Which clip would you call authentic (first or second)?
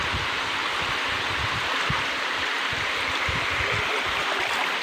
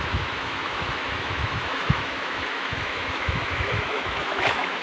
first